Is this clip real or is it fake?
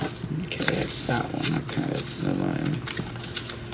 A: real